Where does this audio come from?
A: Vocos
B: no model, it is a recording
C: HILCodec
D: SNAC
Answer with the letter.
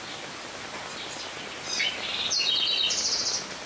B